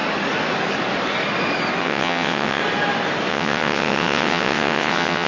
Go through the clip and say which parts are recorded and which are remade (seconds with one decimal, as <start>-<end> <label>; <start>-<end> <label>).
0.0-1.8 recorded; 1.8-2.6 remade; 2.6-3.3 recorded; 3.3-5.3 remade

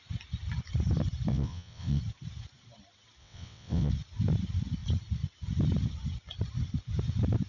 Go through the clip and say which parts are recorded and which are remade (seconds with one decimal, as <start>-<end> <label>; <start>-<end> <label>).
0.0-1.3 recorded; 1.3-2.0 remade; 2.0-3.2 recorded; 3.2-3.9 remade; 3.9-7.5 recorded

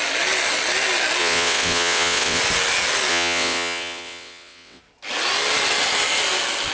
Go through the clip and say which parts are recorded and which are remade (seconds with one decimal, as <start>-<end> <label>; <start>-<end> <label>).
0.0-1.2 recorded; 1.2-2.4 remade; 2.4-3.1 recorded; 3.1-4.8 remade; 4.8-6.7 recorded